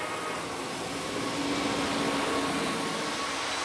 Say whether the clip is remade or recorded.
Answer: recorded